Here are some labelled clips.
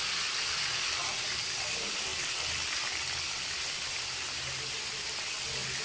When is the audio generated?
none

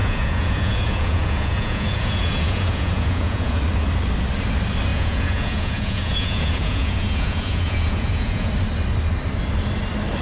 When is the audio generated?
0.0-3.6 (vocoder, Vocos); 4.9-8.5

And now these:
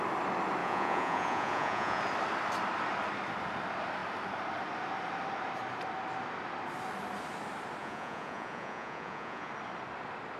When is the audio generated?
0.6-2.0 (vocoder, Vocos); 7.8-9.5

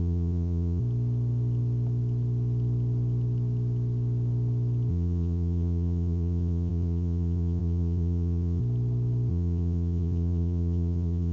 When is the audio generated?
0.0-0.8 (vocoder, Vocos); 4.9-8.6; 9.3-11.3